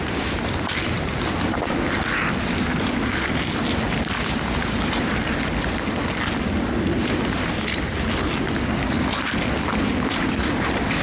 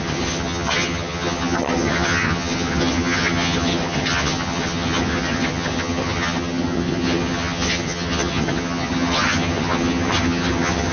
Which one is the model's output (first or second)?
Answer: second